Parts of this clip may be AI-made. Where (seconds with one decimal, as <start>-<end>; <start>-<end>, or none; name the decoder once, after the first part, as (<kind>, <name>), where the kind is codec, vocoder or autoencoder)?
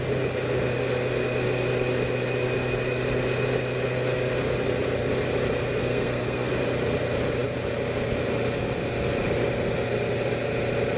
5.8-6.5 (codec, SNAC)